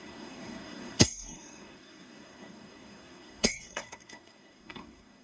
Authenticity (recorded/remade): remade